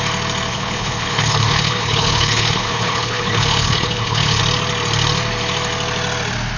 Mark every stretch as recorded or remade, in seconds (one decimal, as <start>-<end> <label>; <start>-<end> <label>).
0.0-0.5 recorded; 0.5-4.4 remade; 4.4-6.6 recorded